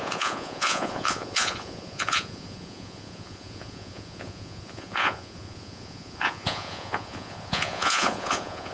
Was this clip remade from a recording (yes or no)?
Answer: yes